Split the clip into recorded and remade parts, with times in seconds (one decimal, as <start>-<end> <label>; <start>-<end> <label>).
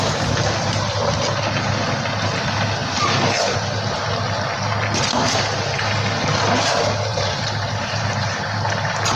0.0-7.1 recorded; 7.1-8.5 remade; 8.5-9.2 recorded